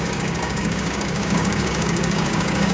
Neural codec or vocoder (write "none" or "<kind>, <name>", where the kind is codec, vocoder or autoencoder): codec, DAC